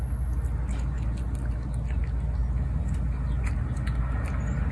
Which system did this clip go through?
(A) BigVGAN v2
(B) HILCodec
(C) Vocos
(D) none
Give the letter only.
D